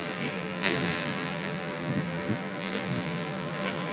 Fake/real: fake